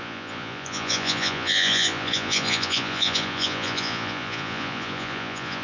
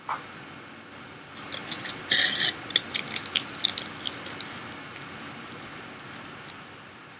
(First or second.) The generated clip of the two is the first